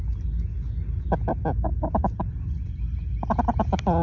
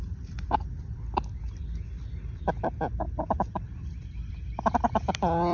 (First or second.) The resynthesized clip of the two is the second